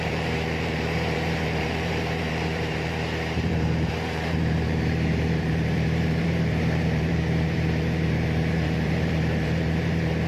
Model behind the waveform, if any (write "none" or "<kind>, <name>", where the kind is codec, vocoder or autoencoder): vocoder, BigVGAN v2